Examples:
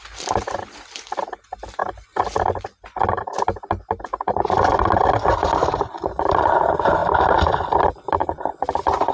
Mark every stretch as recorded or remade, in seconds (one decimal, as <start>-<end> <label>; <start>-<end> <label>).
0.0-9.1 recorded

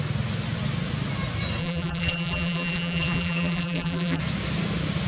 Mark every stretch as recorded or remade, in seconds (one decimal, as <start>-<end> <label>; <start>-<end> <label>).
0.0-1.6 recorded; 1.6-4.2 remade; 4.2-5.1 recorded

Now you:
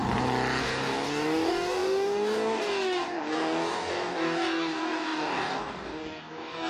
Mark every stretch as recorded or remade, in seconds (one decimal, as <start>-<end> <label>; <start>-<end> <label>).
0.0-0.6 recorded; 0.6-6.7 remade

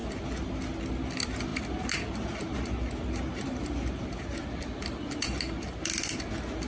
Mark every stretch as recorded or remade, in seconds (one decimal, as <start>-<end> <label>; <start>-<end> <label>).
0.0-6.7 recorded